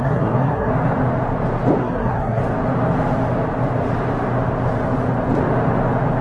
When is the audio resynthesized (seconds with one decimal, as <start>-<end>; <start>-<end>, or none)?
0.0-0.7; 1.8-2.4